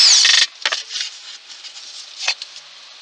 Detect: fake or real real